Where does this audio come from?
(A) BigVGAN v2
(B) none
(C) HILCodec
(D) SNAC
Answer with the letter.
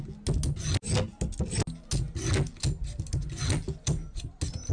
B